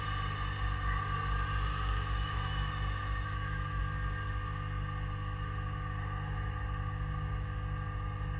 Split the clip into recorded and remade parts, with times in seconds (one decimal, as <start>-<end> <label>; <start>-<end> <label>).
0.0-1.7 recorded; 1.7-3.8 remade; 3.8-8.4 recorded